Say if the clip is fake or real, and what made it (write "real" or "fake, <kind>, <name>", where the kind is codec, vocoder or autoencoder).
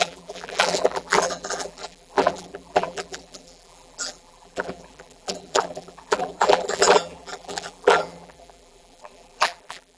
fake, vocoder, BigVGAN v2